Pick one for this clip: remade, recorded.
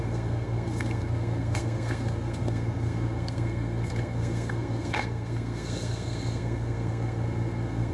remade